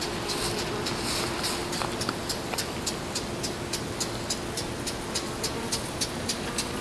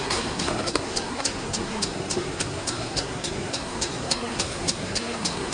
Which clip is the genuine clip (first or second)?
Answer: first